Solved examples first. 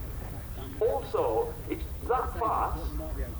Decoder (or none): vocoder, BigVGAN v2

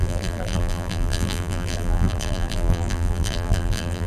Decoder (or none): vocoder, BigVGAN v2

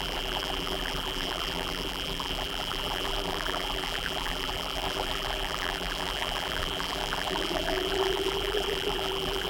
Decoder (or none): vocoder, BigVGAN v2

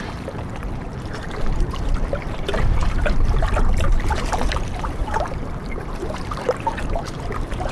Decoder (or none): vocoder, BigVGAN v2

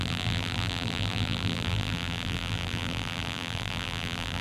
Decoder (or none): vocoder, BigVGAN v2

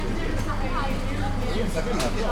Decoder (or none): none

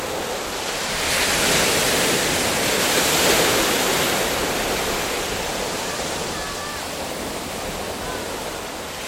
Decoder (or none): none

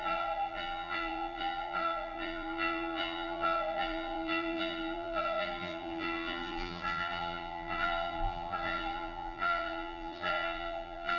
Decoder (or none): vocoder, BigVGAN v2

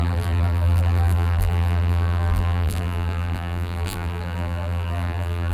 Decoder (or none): vocoder, BigVGAN v2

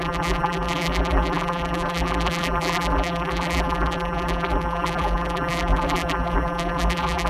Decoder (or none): vocoder, BigVGAN v2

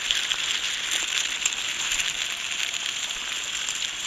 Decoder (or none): none